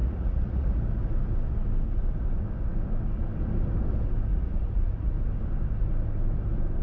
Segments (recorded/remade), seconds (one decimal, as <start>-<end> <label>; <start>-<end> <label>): 0.0-0.8 remade; 0.8-4.3 recorded; 4.3-5.1 remade; 5.1-6.8 recorded